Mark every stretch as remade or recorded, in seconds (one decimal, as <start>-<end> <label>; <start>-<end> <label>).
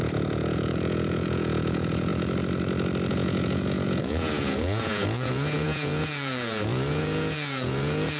0.0-2.1 remade; 2.1-3.1 recorded; 3.1-8.2 remade